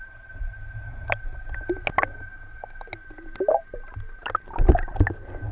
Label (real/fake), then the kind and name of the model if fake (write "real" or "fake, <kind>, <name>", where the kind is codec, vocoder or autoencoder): real